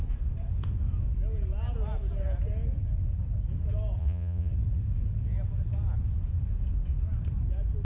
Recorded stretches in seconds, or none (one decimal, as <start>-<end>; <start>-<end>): 0.0-4.0; 4.5-7.8